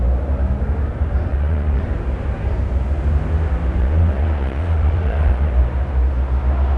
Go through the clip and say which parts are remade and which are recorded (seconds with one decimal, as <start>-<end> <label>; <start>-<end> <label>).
0.0-1.3 recorded; 1.3-1.8 remade; 1.8-3.8 recorded; 3.8-5.5 remade; 5.5-6.8 recorded

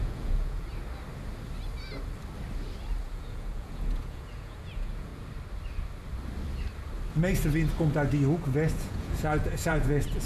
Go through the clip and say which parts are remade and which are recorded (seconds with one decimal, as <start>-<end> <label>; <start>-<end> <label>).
0.0-0.7 remade; 0.7-3.0 recorded; 3.0-5.1 remade; 5.1-8.7 recorded; 8.7-10.3 remade

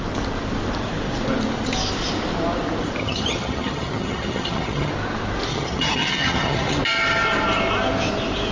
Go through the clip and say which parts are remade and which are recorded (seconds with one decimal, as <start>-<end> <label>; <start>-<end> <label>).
0.0-3.0 recorded; 3.0-4.9 remade; 4.9-5.5 recorded; 5.5-6.8 remade; 6.8-8.5 recorded

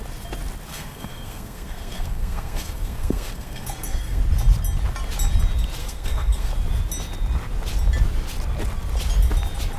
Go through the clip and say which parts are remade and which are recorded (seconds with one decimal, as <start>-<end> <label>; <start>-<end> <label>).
0.0-0.7 recorded; 0.7-4.2 remade; 4.2-5.8 recorded; 5.8-6.5 remade; 6.5-9.8 recorded

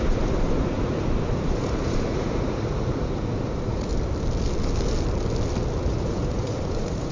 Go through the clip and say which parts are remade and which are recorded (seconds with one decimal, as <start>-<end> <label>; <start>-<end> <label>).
0.0-3.9 remade; 3.9-5.9 recorded; 5.9-7.1 remade